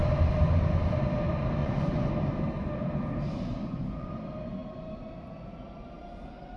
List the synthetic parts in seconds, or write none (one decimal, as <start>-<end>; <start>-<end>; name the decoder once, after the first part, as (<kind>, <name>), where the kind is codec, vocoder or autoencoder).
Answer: 1.6-2.1 (vocoder, Vocos); 3.5-4.1